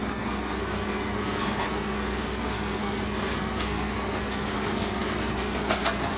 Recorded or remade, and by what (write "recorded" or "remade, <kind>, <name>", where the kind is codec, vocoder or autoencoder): remade, codec, SNAC